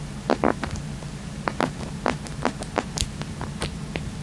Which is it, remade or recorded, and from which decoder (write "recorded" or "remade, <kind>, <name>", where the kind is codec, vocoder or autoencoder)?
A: recorded